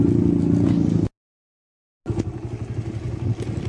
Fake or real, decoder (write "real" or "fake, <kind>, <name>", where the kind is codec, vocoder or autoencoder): real